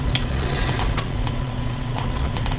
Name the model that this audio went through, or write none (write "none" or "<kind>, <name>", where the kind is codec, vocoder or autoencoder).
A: vocoder, Vocos